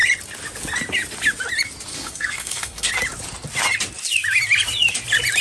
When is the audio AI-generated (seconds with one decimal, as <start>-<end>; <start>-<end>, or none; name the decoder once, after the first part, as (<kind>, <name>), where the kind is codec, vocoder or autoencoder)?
1.9-2.9 (codec, SNAC)